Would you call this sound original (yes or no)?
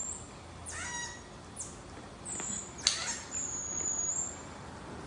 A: yes